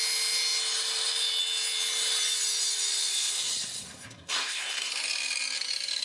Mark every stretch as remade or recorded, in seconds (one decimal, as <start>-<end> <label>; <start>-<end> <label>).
0.0-3.1 recorded; 3.1-4.9 remade; 4.9-6.0 recorded